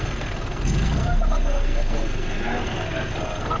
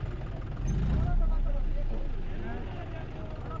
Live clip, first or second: second